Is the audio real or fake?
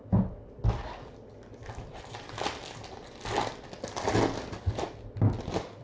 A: real